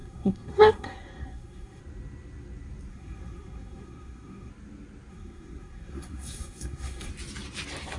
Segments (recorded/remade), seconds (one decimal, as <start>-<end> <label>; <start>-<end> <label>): 0.0-1.8 remade; 1.8-2.9 recorded; 2.9-4.5 remade; 4.5-5.1 recorded; 5.1-7.1 remade; 7.1-8.0 recorded